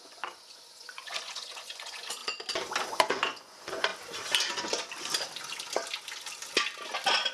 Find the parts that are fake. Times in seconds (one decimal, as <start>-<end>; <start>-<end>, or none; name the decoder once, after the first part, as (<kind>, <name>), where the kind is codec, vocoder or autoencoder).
0.0-2.2 (vocoder, Vocos); 2.9-3.9